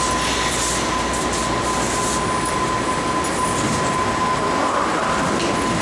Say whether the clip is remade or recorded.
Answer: recorded